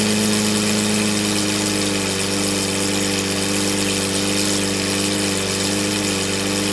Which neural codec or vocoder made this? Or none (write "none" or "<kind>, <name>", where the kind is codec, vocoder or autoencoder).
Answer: none